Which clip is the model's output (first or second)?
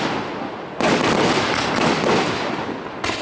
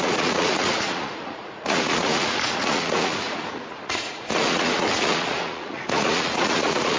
second